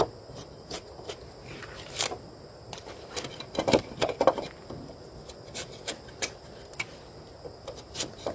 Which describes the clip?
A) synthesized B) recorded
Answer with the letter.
B